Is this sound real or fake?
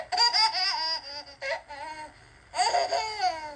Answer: real